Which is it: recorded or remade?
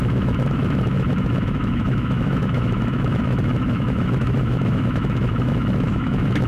remade